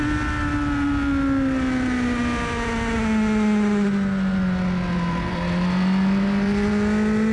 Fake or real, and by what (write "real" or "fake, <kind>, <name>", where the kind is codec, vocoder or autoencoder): real